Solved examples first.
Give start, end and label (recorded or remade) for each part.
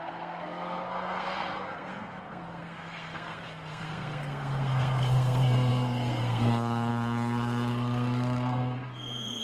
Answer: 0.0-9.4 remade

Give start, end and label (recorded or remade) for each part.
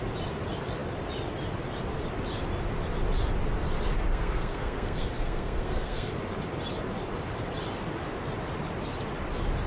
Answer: 0.0-4.1 recorded; 4.1-6.1 remade; 6.1-9.7 recorded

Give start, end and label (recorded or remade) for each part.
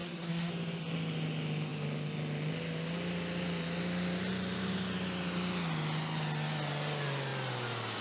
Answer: 0.0-0.5 remade; 0.5-8.0 recorded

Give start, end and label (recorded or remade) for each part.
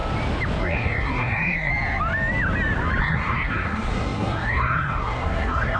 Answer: 0.0-0.6 recorded; 0.6-1.7 remade; 1.7-3.0 recorded; 3.0-5.8 remade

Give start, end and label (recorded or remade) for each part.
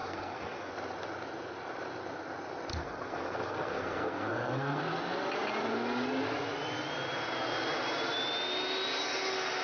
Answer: 0.0-0.7 remade; 0.7-2.7 recorded; 2.7-4.8 remade; 4.8-9.6 recorded